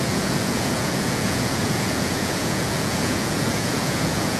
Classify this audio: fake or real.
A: fake